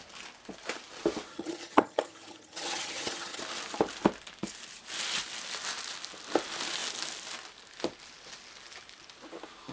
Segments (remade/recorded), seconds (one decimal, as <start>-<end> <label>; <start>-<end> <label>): 0.0-1.3 recorded; 1.3-3.4 remade; 3.4-9.7 recorded